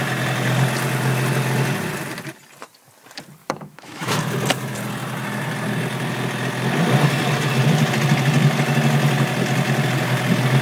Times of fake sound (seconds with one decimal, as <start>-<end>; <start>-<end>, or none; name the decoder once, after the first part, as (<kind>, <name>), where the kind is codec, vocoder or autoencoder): 3.4-4.2 (autoencoder, DAC-VAE)